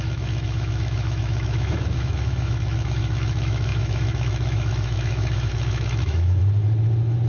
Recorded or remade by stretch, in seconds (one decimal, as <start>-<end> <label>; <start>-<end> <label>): 0.0-6.4 remade; 6.4-7.3 recorded